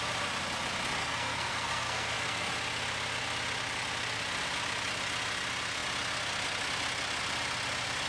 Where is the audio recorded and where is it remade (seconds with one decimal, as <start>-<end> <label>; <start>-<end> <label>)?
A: 0.0-1.0 recorded; 1.0-2.5 remade; 2.5-8.1 recorded